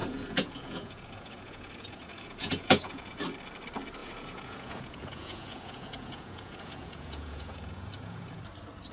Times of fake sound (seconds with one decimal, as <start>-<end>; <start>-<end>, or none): 0.0-3.2; 4.0-8.4